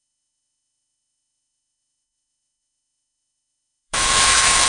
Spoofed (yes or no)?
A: yes